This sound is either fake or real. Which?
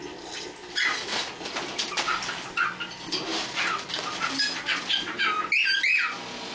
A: real